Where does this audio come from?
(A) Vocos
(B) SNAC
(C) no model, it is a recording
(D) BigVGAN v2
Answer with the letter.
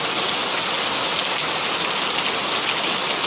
C